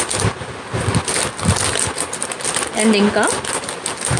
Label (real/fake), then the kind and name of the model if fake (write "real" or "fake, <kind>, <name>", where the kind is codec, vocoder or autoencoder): real